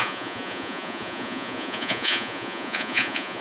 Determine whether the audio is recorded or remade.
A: remade